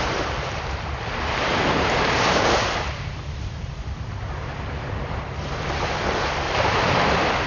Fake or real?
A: fake